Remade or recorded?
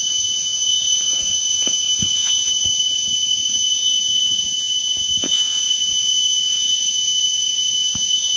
remade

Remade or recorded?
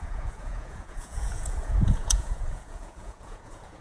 remade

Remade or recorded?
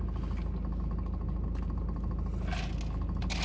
recorded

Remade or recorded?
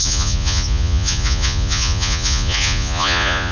remade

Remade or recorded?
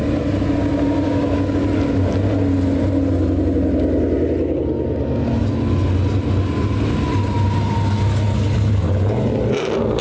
recorded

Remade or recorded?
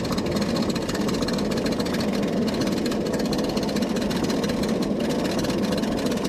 recorded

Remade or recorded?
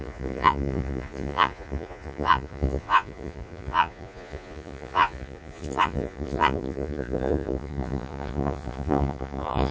remade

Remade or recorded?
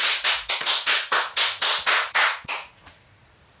remade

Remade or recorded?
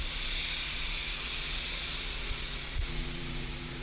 remade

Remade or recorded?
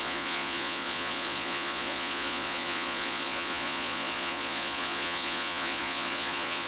remade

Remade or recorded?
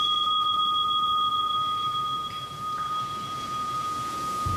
remade